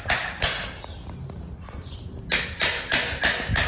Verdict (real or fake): real